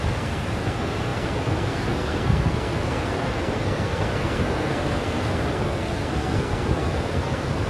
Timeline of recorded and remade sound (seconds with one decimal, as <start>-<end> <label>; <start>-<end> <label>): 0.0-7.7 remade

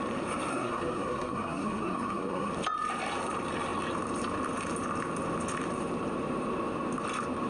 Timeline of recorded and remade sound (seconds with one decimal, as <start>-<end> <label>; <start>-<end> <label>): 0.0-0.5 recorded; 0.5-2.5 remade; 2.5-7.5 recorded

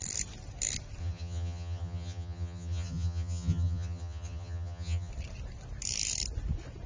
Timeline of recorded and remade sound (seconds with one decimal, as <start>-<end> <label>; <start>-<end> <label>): 0.0-1.0 recorded; 1.0-5.1 remade; 5.1-6.9 recorded